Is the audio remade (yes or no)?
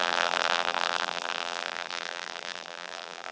yes